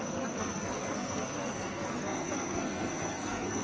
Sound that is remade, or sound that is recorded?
remade